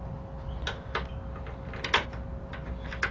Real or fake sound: real